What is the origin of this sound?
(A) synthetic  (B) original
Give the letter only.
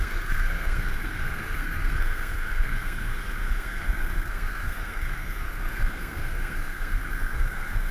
A